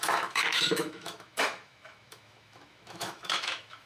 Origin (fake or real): fake